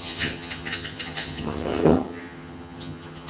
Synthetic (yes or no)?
yes